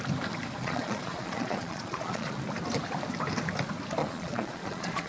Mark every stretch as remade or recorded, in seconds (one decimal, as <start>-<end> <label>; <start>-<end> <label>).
0.0-0.6 recorded; 0.6-2.4 remade; 2.4-4.0 recorded; 4.0-5.1 remade